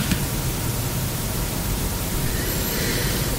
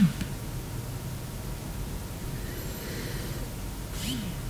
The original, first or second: second